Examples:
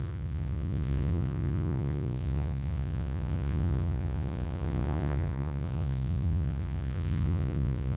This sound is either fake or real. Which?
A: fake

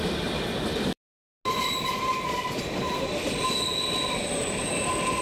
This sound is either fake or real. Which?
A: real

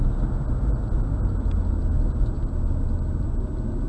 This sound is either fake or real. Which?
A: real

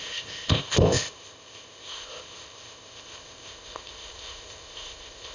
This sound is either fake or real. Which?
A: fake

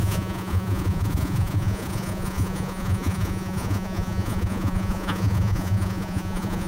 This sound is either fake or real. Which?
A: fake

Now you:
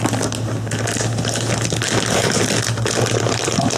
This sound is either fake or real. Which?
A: real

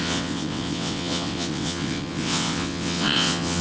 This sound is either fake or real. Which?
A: fake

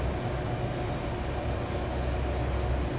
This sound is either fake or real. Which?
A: real